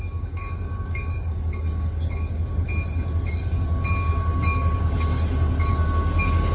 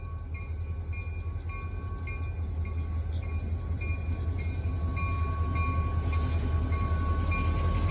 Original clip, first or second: second